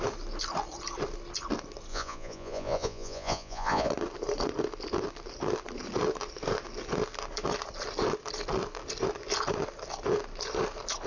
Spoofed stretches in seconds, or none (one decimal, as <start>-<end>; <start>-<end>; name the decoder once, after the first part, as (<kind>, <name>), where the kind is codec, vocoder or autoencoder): 1.9-3.9 (vocoder, Vocos)